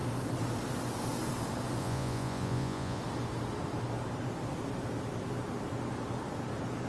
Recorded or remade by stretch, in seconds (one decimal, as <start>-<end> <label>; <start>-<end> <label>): 0.0-1.8 recorded; 1.8-3.0 remade; 3.0-6.9 recorded